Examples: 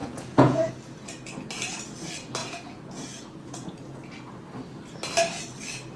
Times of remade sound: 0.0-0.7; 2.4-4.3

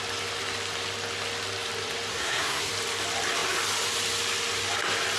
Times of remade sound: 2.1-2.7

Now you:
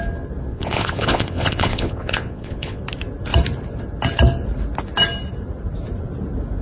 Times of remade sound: 0.5-2.8

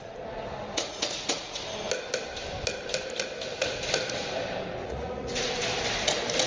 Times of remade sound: 0.7-1.6; 4.8-5.5

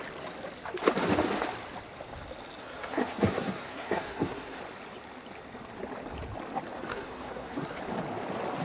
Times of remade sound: 2.6-4.6; 6.9-7.8